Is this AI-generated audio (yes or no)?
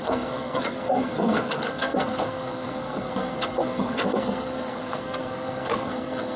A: yes